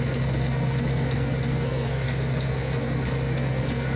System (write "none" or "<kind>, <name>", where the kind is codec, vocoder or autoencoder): codec, SNAC